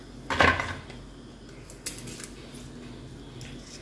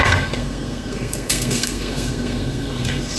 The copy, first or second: second